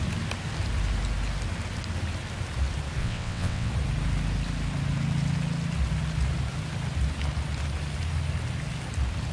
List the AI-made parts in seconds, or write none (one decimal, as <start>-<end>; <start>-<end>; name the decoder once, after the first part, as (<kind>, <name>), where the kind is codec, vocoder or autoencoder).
3.0-3.7 (vocoder, WaveNeXt)